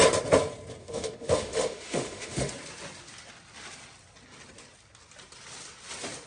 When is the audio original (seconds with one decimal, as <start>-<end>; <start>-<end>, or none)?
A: 0.0-0.8; 2.5-6.3